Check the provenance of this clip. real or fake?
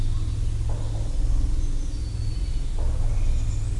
real